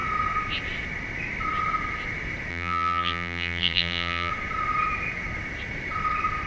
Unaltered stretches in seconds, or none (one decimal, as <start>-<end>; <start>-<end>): 0.0-2.5; 4.3-6.5